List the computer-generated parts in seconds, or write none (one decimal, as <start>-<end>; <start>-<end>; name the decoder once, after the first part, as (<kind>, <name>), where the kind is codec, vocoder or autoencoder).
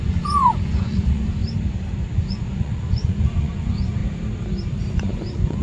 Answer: 0.0-1.4 (vocoder, Vocos); 2.3-4.0; 4.9-5.6